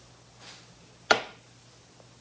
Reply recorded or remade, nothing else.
recorded